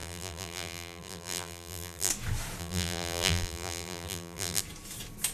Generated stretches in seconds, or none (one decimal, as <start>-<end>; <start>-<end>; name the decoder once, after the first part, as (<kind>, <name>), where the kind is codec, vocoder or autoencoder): 0.0-2.1 (vocoder, BigVGAN v2); 2.6-4.6